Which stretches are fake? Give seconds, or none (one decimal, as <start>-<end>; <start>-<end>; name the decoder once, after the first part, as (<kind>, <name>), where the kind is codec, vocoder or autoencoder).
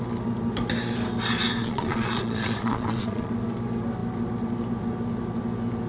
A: 1.6-3.3 (vocoder, Vocos)